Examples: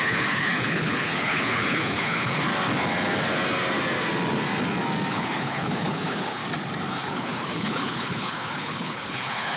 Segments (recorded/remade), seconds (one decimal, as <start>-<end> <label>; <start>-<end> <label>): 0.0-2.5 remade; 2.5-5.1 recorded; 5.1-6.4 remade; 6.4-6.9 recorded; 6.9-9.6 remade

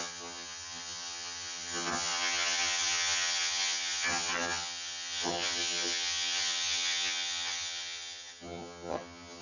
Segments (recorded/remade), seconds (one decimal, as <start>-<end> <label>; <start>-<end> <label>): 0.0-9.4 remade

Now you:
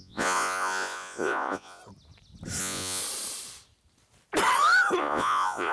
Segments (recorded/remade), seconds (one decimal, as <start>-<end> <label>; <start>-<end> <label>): 0.0-1.8 remade; 1.8-2.6 recorded; 2.6-3.0 remade; 3.0-5.0 recorded; 5.0-5.7 remade

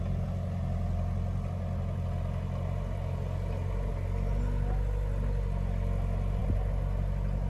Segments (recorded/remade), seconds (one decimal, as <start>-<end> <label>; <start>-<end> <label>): 0.0-7.5 recorded

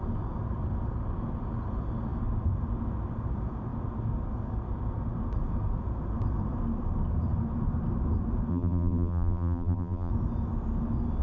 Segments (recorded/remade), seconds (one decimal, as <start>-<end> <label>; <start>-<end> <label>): 0.0-8.5 recorded; 8.5-10.1 remade; 10.1-11.2 recorded